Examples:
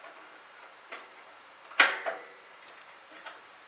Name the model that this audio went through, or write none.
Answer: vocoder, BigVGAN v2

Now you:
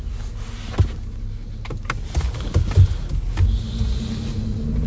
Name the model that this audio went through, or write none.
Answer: none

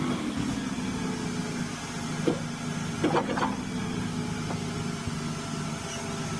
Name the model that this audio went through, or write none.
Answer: none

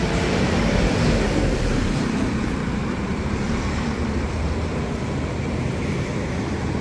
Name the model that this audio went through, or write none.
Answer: vocoder, BigVGAN v2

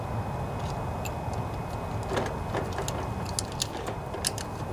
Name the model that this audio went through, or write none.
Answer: none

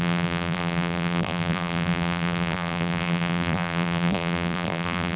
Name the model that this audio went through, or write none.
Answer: vocoder, BigVGAN v2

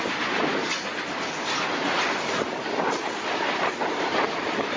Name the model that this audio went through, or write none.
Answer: none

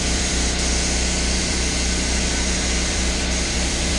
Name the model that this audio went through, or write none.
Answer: vocoder, BigVGAN v2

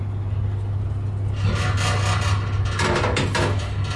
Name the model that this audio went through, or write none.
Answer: none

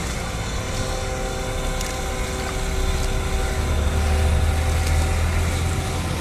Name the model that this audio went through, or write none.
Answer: none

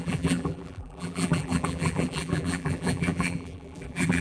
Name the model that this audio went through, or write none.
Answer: vocoder, BigVGAN v2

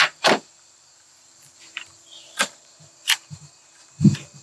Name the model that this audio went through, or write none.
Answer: vocoder, BigVGAN v2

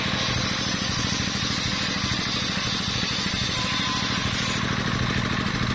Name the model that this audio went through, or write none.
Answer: none